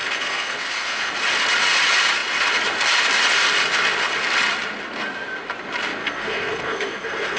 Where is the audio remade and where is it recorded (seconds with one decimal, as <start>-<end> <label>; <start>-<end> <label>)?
0.0-1.1 remade; 1.1-6.0 recorded; 6.0-7.4 remade